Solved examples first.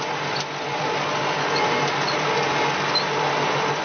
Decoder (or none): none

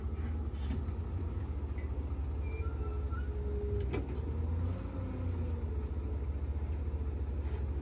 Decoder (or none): none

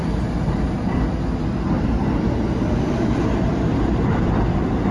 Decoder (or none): vocoder, BigVGAN v2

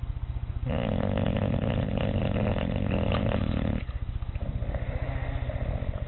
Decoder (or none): none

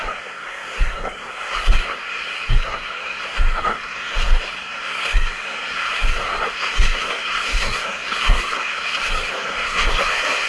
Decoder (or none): codec, SNAC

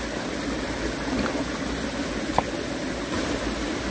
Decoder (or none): none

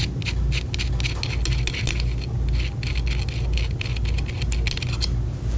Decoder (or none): none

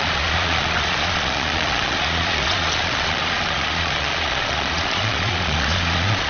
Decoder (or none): vocoder, Vocos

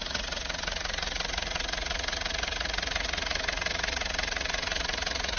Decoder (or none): vocoder, Vocos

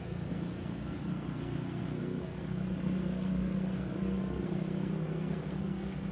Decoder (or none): codec, SNAC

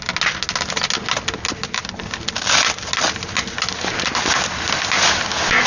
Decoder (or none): none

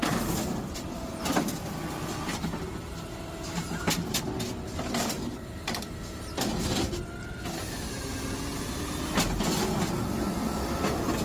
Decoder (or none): none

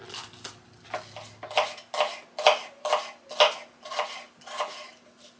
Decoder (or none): none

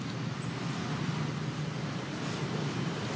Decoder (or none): none